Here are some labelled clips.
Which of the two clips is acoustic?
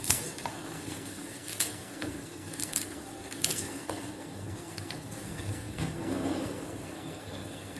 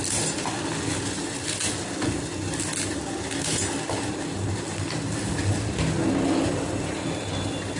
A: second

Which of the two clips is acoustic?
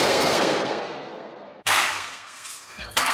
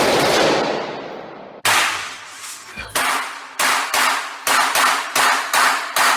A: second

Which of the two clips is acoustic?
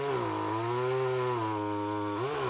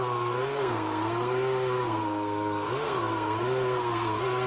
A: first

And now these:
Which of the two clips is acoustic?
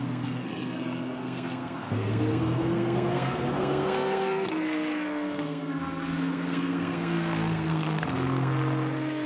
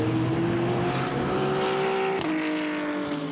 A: second